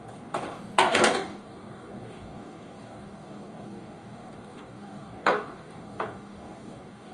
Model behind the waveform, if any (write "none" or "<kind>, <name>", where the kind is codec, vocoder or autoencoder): codec, DAC